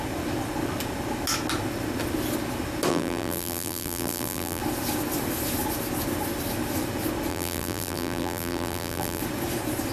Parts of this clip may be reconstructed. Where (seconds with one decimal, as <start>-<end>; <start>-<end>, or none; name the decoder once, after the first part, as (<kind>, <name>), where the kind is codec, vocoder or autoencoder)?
2.9-4.6 (vocoder, BigVGAN v2); 7.3-9.2